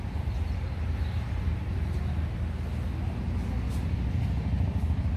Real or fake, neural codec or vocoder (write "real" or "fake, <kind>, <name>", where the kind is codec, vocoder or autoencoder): real